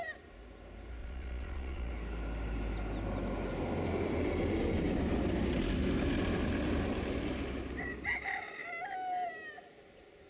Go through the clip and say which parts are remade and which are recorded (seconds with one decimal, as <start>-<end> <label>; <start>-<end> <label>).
0.0-1.0 recorded; 1.0-1.9 remade; 1.9-10.3 recorded